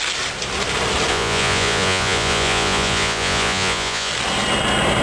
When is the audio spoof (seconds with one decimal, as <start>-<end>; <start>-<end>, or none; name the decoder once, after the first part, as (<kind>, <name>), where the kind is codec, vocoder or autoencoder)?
1.1-4.1 (vocoder, Vocos)